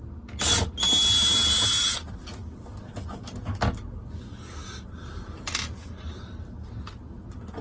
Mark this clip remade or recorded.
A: recorded